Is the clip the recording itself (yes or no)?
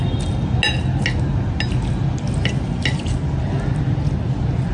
yes